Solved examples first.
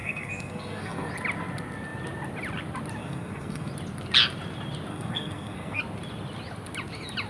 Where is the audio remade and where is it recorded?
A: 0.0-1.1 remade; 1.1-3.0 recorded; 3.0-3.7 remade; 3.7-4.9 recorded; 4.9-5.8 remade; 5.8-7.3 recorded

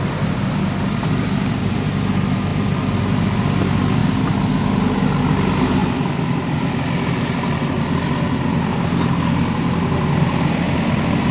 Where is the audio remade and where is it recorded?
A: 0.0-2.5 recorded; 2.5-3.0 remade; 3.0-11.3 recorded

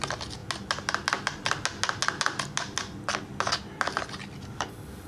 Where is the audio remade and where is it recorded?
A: 0.0-5.1 recorded

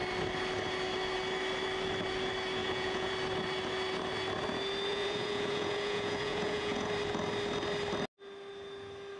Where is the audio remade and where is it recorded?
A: 0.0-2.6 recorded; 2.6-3.1 remade; 3.1-4.9 recorded; 4.9-6.9 remade; 6.9-9.2 recorded

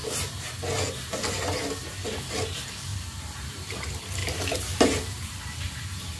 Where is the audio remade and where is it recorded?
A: 0.0-2.9 recorded; 2.9-3.8 remade; 3.8-4.2 recorded; 4.2-5.6 remade; 5.6-6.2 recorded

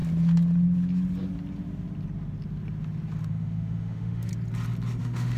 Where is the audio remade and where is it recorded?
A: 0.0-3.2 recorded; 3.2-4.3 remade; 4.3-5.0 recorded; 5.0-5.4 remade

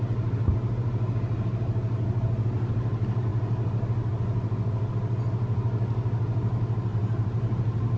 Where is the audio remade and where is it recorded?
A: 0.0-6.9 recorded; 6.9-7.6 remade; 7.6-8.0 recorded